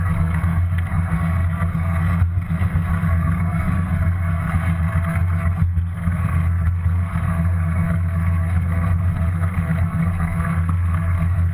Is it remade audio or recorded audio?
remade